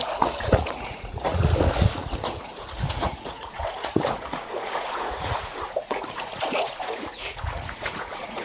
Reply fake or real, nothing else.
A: fake